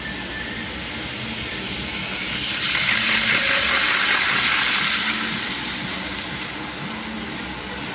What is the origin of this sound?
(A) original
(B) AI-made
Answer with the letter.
A